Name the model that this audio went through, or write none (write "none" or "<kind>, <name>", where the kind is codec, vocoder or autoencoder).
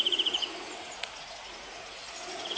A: vocoder, Vocos